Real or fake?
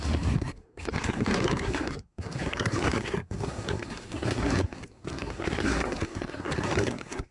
fake